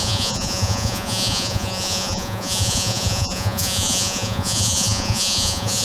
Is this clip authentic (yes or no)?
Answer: no